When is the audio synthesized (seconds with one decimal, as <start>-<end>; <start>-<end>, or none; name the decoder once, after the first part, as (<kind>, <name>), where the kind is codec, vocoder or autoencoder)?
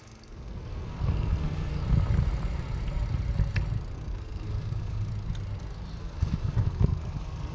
0.0-1.8 (codec, SNAC); 3.9-5.1; 6.0-7.5